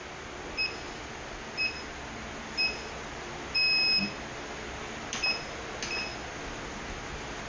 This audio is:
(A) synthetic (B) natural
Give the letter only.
B